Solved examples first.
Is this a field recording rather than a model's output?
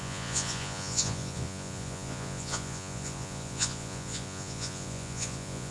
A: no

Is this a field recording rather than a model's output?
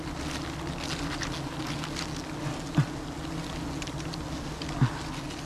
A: yes